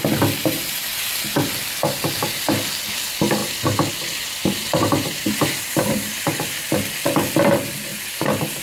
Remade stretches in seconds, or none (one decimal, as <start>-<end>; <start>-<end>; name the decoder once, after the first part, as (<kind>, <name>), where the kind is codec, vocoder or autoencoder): 0.4-1.1 (vocoder, BigVGAN v2); 4.4-6.8; 7.9-8.6